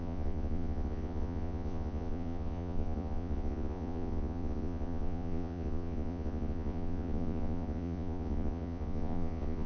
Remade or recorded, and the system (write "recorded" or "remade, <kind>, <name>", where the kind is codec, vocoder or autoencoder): remade, vocoder, Vocos